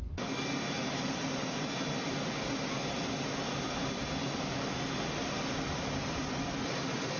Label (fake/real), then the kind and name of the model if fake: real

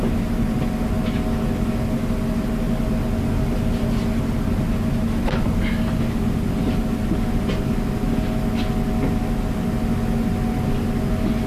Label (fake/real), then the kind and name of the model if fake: real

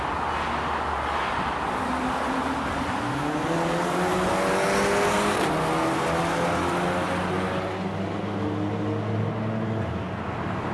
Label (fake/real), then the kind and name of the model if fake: real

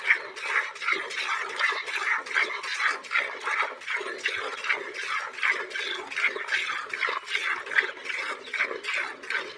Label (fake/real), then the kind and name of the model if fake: real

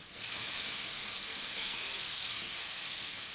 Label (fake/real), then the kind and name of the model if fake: fake, codec, SNAC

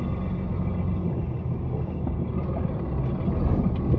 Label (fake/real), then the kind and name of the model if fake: real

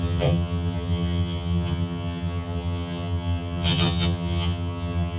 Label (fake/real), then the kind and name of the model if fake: fake, vocoder, HiFi-GAN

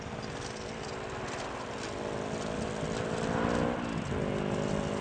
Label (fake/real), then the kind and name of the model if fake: real